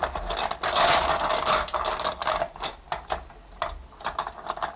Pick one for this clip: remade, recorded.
recorded